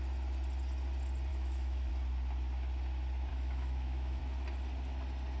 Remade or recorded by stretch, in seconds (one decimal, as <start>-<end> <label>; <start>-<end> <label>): 0.0-1.3 recorded; 1.3-1.9 remade; 1.9-3.3 recorded; 3.3-4.2 remade; 4.2-5.4 recorded